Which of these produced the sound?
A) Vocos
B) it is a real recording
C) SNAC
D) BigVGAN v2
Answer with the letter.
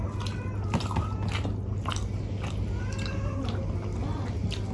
B